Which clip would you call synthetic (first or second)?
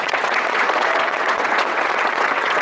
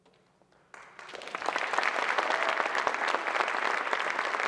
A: first